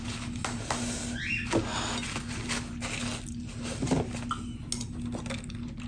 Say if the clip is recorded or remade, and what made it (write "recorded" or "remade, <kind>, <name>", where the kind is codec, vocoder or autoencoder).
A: recorded